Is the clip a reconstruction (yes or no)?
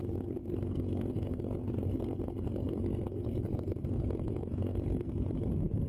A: yes